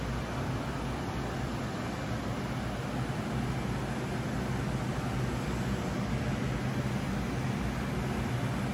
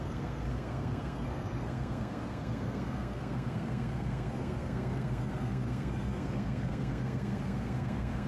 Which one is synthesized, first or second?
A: second